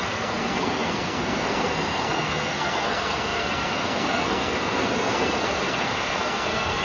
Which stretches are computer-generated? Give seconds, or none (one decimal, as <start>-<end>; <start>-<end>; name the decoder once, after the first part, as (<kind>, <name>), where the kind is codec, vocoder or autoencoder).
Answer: 0.0-6.8 (codec, SNAC)